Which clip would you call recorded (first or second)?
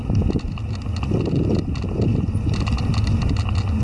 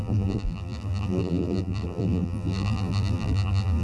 first